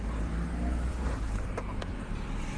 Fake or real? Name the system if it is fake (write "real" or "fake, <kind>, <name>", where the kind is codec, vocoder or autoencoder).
fake, vocoder, BigVGAN v2